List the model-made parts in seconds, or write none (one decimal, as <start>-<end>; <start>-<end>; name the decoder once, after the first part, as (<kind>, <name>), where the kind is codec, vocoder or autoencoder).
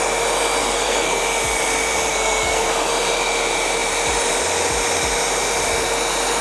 0.6-1.2 (codec, SNAC); 2.1-2.9